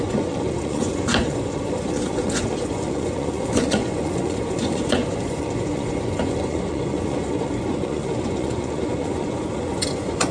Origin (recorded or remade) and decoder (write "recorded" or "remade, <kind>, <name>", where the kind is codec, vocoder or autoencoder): remade, vocoder, Vocos